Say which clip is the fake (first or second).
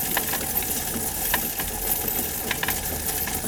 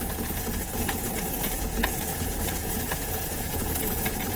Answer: second